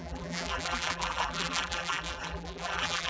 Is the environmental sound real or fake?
fake